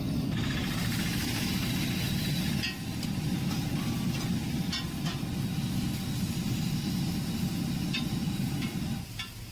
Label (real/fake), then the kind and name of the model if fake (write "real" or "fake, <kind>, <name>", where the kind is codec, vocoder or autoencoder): real